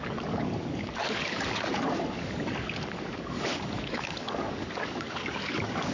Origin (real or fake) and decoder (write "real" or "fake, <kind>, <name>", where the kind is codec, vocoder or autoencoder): fake, codec, DAC